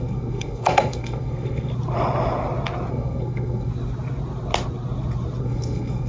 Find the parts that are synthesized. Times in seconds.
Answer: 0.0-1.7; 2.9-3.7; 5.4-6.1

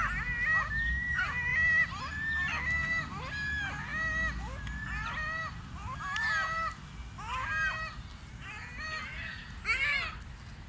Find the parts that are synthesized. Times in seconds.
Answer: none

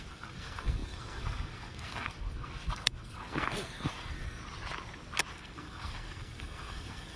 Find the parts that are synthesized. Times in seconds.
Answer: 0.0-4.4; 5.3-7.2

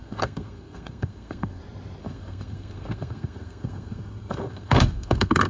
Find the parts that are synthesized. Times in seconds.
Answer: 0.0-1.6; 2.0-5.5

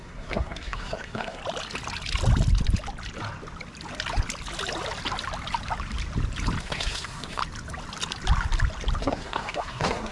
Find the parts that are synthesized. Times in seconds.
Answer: 0.0-1.4; 6.6-7.4; 9.0-10.1

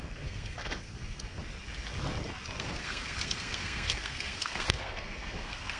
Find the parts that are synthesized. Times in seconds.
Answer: 0.0-1.4; 2.6-5.8

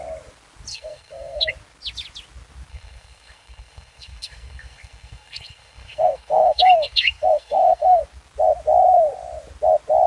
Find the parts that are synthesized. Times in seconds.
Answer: 0.7-1.5; 2.7-8.0

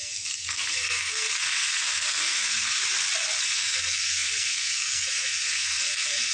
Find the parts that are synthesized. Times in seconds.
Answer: 0.0-2.8; 3.5-6.3